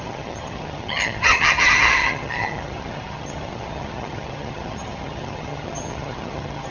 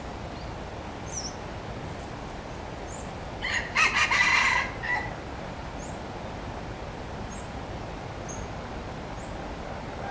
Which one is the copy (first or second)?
first